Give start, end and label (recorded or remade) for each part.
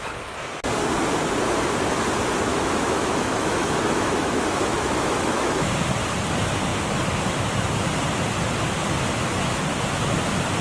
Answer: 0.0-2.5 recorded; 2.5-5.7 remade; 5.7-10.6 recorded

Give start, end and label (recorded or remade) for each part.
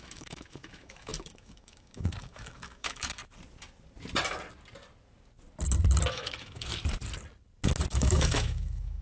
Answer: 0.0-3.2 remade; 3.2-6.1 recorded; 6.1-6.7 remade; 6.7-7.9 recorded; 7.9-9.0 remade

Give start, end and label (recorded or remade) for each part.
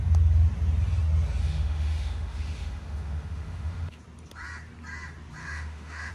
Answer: 0.0-1.4 recorded; 1.4-4.0 remade; 4.0-5.4 recorded; 5.4-6.1 remade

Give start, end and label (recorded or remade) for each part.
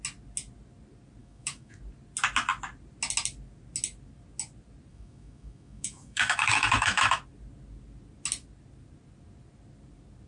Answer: 0.0-1.2 recorded; 1.2-1.8 remade; 1.8-4.9 recorded; 4.9-7.2 remade; 7.2-10.3 recorded